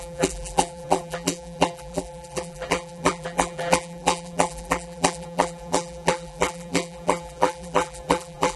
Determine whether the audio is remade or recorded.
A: remade